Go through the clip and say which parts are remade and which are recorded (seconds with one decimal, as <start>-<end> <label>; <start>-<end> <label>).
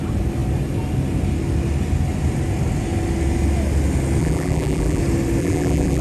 0.0-4.2 recorded; 4.2-5.0 remade; 5.0-5.4 recorded; 5.4-6.0 remade